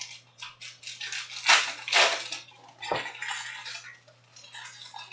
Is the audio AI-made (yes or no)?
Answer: no